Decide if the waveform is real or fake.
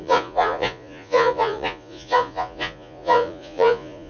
fake